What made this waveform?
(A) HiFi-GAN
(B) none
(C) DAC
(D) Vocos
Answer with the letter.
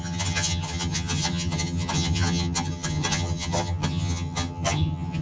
A